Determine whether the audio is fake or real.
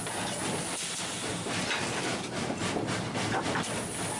real